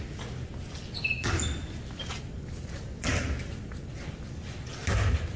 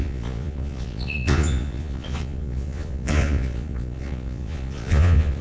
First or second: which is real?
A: first